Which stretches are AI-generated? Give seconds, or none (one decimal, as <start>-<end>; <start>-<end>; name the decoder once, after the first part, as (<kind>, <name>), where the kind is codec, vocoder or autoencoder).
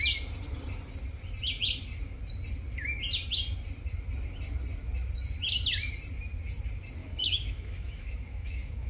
7.0-8.9 (autoencoder, DAC-VAE)